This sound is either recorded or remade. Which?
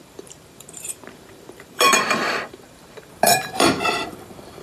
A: remade